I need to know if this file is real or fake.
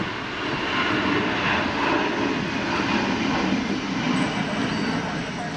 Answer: real